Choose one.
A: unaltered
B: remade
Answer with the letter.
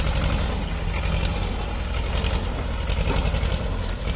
A